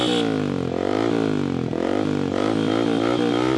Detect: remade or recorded recorded